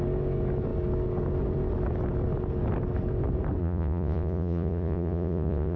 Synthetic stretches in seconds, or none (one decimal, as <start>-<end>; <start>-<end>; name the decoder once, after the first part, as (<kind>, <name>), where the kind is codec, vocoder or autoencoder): 3.6-5.8 (vocoder, Vocos)